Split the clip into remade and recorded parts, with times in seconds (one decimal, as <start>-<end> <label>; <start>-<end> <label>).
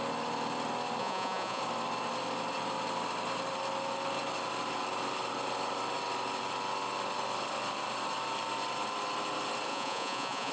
0.0-1.0 recorded; 1.0-1.6 remade; 1.6-9.7 recorded; 9.7-10.5 remade